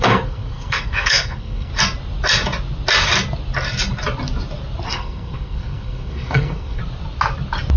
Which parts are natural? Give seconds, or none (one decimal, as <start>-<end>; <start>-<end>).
1.7-4.9; 6.8-7.8